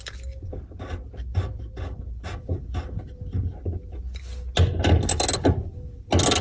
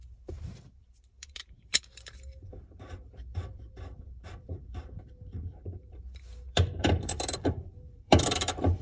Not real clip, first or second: second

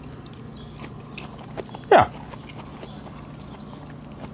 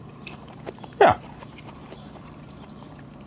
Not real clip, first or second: second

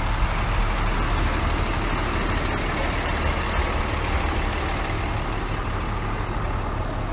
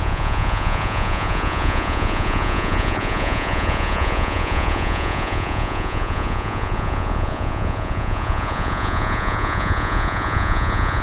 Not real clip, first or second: second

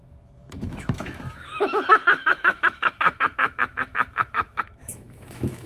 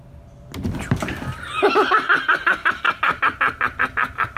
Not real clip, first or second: first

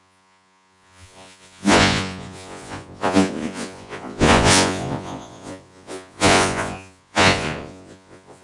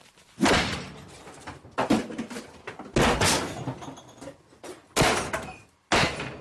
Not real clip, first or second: first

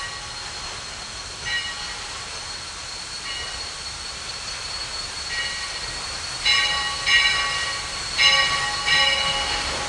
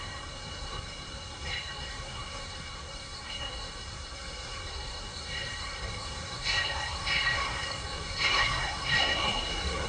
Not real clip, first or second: second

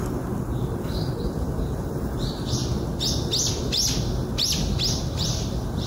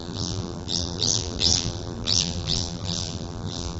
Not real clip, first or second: second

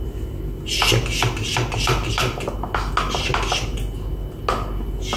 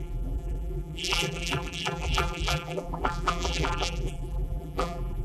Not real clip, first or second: second